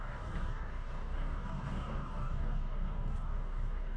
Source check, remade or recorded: remade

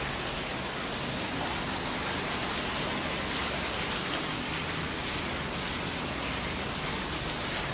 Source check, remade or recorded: recorded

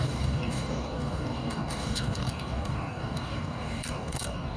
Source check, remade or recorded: remade